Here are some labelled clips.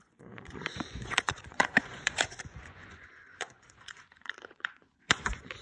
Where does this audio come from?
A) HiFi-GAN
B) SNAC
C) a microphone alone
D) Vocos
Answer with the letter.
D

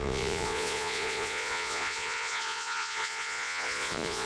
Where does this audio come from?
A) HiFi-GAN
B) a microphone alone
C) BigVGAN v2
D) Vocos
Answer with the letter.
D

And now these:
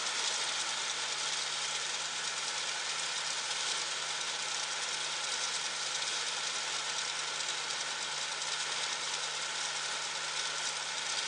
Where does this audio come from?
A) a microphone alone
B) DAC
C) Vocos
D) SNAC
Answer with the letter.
A